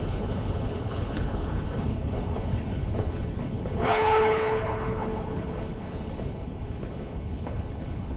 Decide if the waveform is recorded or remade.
remade